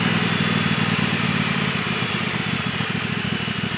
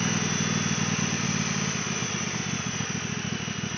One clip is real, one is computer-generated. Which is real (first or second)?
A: second